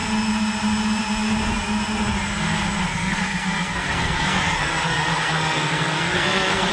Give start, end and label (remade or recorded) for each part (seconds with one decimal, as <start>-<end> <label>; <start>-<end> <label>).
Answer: 0.0-2.9 recorded; 2.9-6.7 remade